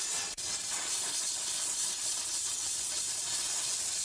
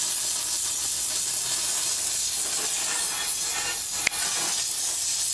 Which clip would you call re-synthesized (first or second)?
first